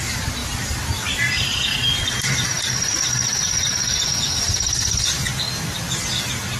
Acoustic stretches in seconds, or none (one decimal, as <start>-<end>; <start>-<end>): 3.2-6.6